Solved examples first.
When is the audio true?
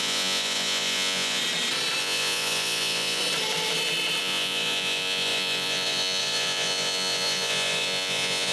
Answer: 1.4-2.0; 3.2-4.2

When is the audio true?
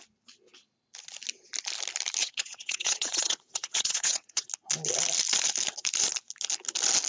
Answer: 0.0-2.2; 4.5-7.1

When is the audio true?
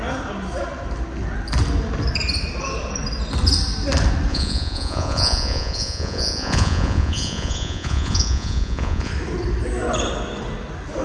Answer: 0.0-4.3; 9.1-11.0